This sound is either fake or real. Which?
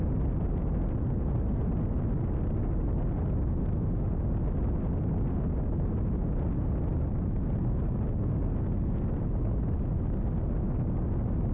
real